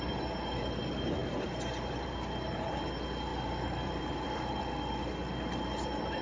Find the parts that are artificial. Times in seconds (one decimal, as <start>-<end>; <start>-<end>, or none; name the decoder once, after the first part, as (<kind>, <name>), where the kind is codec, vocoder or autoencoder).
1.2-2.7 (vocoder, BigVGAN v2); 3.3-4.6

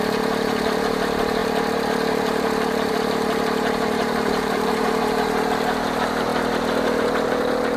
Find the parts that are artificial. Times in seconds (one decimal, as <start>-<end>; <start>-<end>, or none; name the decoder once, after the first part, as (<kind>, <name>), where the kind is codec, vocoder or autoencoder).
0.0-6.3 (vocoder, BigVGAN v2); 7.0-7.8

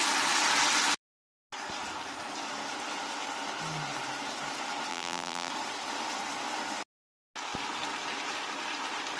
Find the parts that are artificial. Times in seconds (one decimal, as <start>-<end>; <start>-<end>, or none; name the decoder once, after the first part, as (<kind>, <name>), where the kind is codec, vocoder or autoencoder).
4.9-5.5 (vocoder, BigVGAN v2)

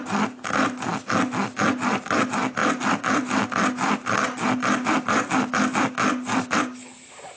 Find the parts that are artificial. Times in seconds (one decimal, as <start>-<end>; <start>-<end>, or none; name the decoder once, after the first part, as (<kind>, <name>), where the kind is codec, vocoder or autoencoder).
none

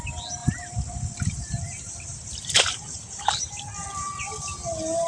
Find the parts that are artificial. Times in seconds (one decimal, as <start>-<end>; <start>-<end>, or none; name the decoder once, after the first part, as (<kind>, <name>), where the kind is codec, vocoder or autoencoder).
0.4-3.5 (vocoder, BigVGAN v2)

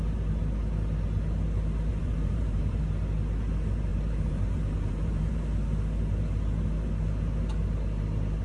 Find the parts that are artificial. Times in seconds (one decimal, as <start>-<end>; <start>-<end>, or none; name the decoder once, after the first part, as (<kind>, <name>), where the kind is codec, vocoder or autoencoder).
1.9-2.8 (vocoder, BigVGAN v2); 3.9-5.4

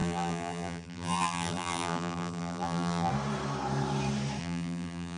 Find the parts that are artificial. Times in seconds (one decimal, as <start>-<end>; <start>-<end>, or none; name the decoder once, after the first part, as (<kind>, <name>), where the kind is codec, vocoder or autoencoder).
0.0-3.1 (vocoder, BigVGAN v2); 4.4-5.2